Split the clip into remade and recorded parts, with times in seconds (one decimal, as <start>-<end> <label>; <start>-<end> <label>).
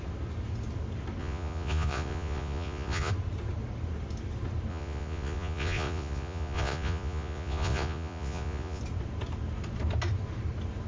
0.0-1.2 recorded; 1.2-3.1 remade; 3.1-4.7 recorded; 4.7-8.8 remade; 8.8-10.9 recorded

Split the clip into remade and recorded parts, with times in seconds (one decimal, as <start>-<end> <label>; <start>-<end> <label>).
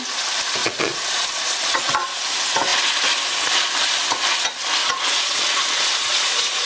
0.0-0.6 recorded; 0.6-2.3 remade; 2.3-4.8 recorded; 4.8-6.7 remade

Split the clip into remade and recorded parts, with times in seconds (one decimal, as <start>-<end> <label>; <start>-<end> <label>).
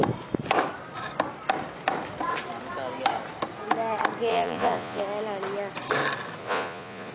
0.0-4.3 recorded; 4.3-5.0 remade; 5.0-6.4 recorded; 6.4-7.1 remade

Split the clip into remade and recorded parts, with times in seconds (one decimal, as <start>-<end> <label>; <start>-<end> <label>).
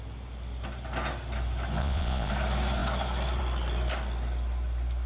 0.0-1.8 recorded; 1.8-2.3 remade; 2.3-5.1 recorded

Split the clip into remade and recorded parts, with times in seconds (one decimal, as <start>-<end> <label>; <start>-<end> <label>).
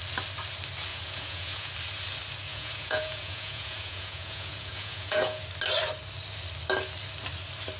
0.0-0.9 recorded; 0.9-1.7 remade; 1.7-2.5 recorded; 2.5-5.4 remade; 5.4-7.8 recorded